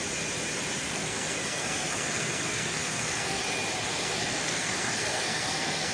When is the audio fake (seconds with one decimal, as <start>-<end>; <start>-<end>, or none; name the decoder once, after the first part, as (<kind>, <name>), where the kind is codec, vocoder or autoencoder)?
0.8-3.4 (codec, SNAC); 3.9-5.9